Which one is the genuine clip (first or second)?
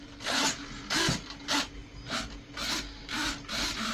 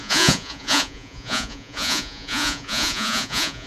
first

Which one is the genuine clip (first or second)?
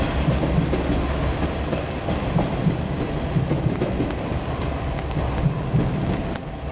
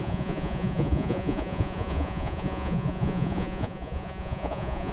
first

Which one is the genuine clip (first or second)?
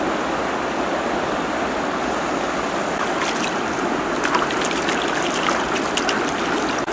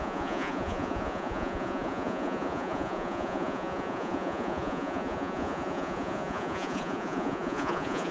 first